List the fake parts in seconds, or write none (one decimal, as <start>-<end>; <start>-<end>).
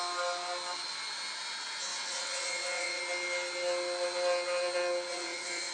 1.9-3.0; 5.1-5.7